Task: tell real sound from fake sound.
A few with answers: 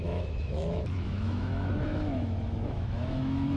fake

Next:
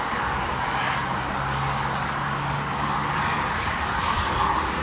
fake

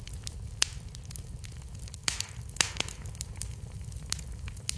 real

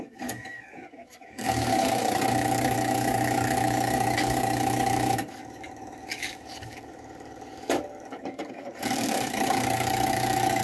fake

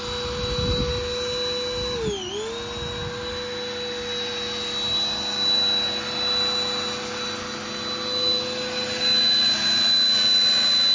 real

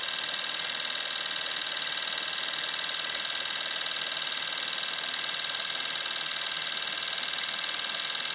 real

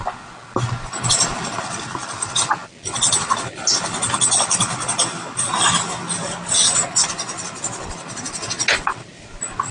real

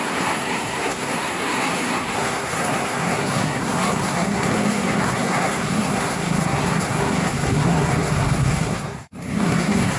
fake